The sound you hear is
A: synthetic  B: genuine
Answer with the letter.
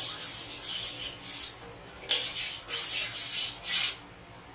B